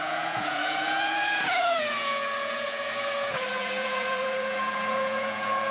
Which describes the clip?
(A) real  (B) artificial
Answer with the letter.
B